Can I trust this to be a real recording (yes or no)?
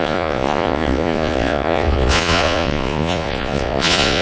no